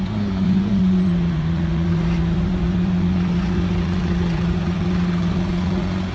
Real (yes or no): no